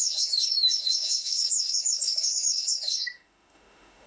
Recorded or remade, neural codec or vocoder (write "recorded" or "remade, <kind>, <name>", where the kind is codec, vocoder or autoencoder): remade, autoencoder, DAC-VAE